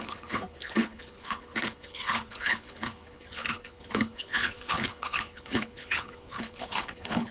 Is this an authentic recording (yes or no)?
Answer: no